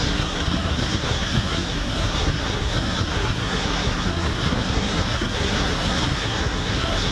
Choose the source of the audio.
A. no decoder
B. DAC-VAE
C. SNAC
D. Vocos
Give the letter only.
C